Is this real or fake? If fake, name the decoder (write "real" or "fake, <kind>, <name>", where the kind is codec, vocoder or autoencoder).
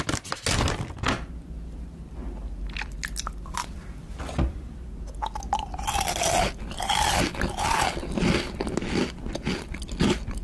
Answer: real